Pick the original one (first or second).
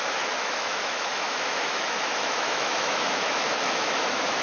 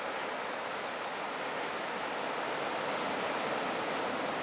second